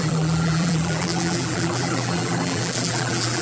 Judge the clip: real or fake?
fake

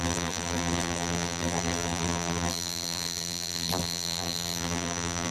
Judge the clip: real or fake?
fake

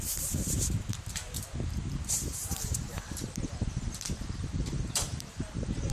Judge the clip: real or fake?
fake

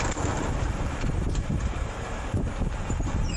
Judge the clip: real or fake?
fake